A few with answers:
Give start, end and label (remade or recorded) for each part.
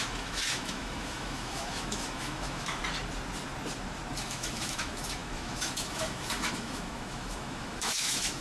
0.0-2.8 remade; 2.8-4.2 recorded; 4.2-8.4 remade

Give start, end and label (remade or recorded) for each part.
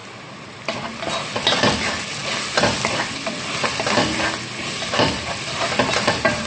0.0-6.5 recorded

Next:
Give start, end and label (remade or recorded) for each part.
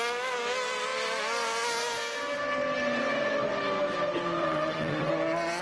0.0-4.4 recorded; 4.4-5.1 remade; 5.1-5.6 recorded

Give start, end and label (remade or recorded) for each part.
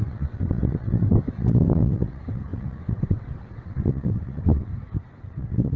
0.0-4.7 remade; 4.7-5.2 recorded; 5.2-5.8 remade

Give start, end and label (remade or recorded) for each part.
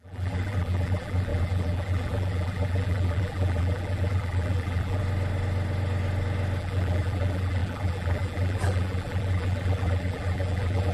0.0-5.0 remade; 5.0-6.6 recorded; 6.6-10.9 remade